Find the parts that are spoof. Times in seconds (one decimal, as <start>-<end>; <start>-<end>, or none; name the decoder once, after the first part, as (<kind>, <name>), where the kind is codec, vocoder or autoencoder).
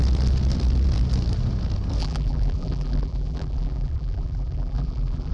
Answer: 2.0-5.3 (vocoder, BigVGAN v2)